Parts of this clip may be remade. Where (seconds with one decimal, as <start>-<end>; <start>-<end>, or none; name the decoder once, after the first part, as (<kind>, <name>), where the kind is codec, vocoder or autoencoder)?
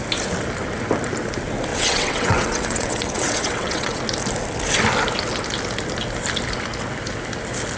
1.7-4.0 (vocoder, WaveNeXt)